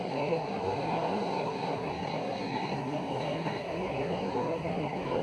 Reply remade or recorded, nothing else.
remade